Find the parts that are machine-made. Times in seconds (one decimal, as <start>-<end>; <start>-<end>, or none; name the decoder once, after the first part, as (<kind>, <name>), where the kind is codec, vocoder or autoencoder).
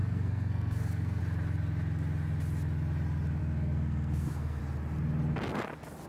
0.0-1.2 (codec, SNAC); 3.4-4.6